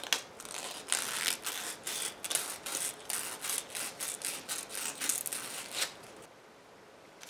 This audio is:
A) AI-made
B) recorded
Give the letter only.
B